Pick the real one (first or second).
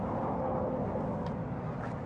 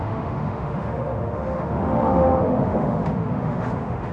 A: first